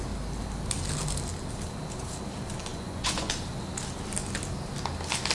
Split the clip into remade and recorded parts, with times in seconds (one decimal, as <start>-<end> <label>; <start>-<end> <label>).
0.0-2.7 recorded; 2.7-3.3 remade; 3.3-5.3 recorded